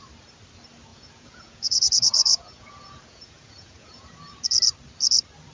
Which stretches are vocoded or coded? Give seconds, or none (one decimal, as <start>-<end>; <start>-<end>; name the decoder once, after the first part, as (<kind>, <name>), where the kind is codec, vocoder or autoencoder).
0.9-4.2 (vocoder, Vocos)